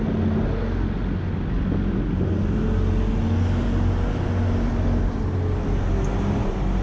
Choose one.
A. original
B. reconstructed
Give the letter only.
A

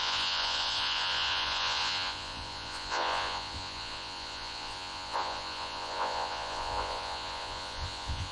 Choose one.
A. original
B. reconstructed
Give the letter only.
B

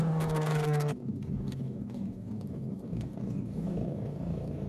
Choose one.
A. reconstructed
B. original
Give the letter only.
A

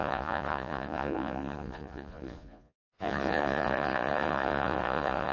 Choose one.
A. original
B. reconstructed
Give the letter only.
B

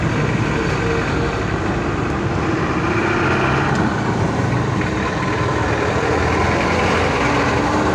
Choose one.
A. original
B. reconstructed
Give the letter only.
A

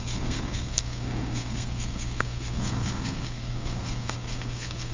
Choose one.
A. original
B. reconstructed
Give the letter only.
B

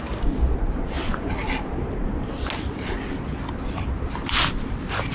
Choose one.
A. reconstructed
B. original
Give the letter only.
B